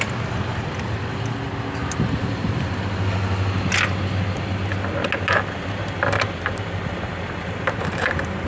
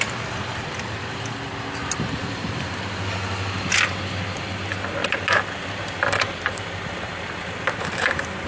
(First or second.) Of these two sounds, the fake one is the second